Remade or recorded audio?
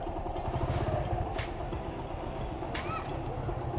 recorded